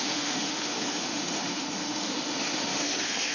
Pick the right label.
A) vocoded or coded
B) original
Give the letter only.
A